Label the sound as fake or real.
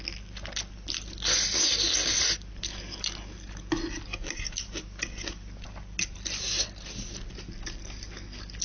real